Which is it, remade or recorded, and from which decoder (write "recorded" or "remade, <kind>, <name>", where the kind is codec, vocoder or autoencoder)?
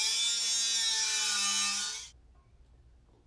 recorded